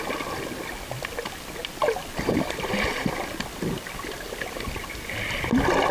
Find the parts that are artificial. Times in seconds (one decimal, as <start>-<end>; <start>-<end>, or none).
none